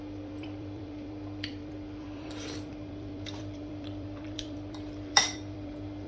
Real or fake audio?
fake